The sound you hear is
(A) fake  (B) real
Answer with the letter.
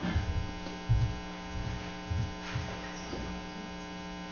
B